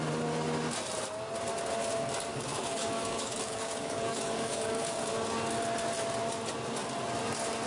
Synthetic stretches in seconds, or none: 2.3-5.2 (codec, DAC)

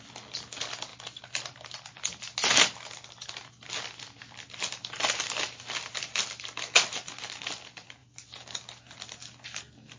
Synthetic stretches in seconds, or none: none

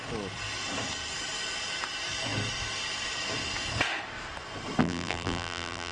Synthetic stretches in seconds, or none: 4.8-5.9 (vocoder, BigVGAN v2)

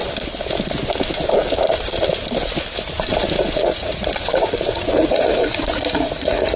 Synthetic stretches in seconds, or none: 3.5-6.6 (vocoder, Vocos)

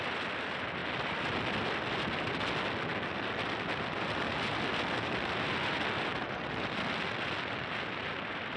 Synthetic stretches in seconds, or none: none

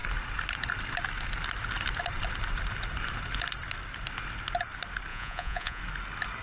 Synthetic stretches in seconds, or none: 5.1-5.8 (vocoder, Vocos)

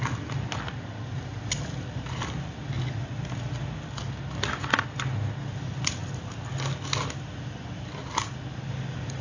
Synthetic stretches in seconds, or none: none

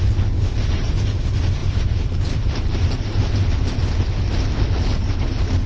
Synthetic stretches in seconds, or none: 1.6-3.8 (vocoder, BigVGAN v2)